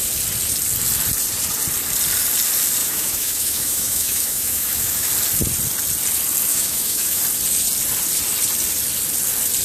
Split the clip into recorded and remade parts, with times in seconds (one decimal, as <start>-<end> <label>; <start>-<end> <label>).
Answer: 0.0-2.8 recorded; 2.8-5.1 remade; 5.1-6.5 recorded; 6.5-7.2 remade; 7.2-9.6 recorded